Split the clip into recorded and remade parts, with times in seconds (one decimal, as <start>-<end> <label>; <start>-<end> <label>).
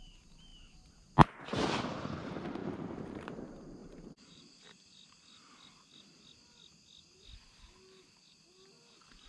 0.0-2.6 recorded; 2.6-3.4 remade; 3.4-3.8 recorded; 3.8-4.7 remade; 4.7-9.3 recorded